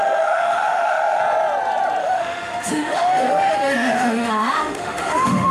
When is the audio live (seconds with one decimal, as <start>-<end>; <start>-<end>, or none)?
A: 1.2-2.0